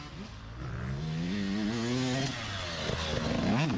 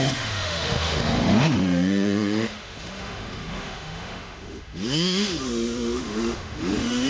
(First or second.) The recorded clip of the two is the first